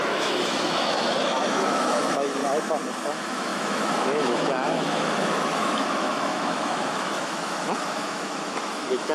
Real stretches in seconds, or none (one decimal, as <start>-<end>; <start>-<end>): 2.4-3.1

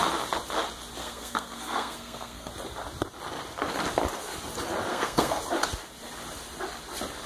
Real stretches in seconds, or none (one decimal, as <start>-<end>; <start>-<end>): 0.0-1.0; 2.5-4.9; 5.4-7.3

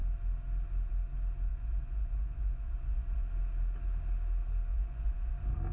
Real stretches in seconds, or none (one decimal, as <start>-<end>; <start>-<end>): 0.0-1.5; 3.3-4.7; 5.3-5.7

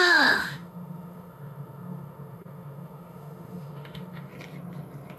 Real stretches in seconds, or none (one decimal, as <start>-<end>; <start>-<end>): 4.3-5.2

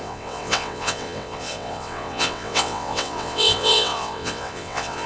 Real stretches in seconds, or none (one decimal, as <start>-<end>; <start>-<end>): none

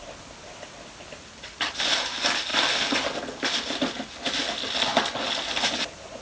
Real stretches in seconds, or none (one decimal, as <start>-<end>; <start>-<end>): 0.0-6.2

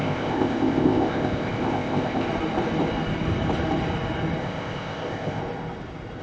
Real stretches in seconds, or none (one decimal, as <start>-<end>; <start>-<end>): 2.3-4.4; 5.4-6.2